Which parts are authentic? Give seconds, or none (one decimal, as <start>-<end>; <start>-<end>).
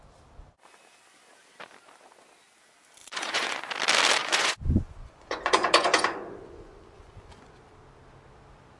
0.0-3.0; 3.7-4.2; 7.5-8.8